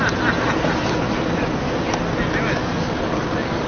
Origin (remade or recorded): recorded